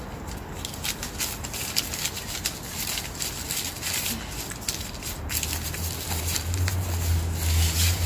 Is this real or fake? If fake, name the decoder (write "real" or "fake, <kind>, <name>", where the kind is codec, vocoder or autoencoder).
real